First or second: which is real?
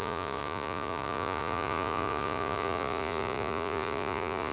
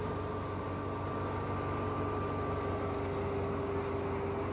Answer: second